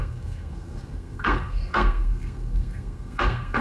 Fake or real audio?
fake